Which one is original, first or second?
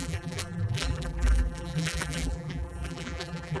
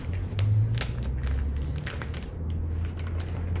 second